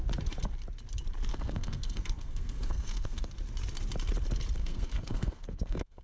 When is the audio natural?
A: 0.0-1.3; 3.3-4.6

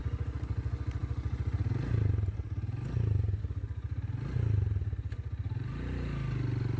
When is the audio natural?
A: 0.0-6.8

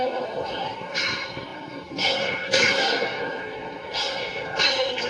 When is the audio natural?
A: none

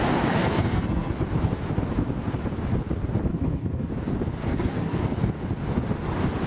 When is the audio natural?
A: 0.0-0.4; 1.1-3.3; 3.9-4.4; 5.0-6.5

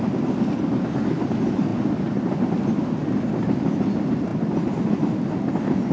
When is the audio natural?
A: 0.0-5.9

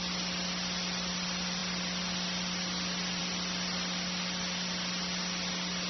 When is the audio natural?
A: 0.0-5.9

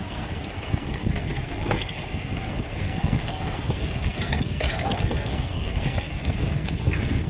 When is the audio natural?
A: none